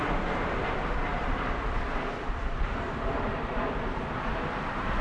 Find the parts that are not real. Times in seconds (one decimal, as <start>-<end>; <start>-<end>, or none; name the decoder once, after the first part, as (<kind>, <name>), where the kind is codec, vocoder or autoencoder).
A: 1.1-3.7 (vocoder, BigVGAN v2)